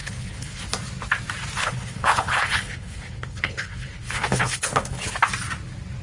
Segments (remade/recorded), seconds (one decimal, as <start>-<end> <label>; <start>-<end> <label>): 0.0-0.6 remade; 0.6-1.6 recorded; 1.6-5.2 remade; 5.2-6.0 recorded